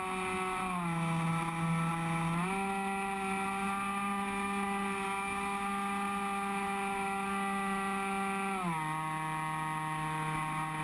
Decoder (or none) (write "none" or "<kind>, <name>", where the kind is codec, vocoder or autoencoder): none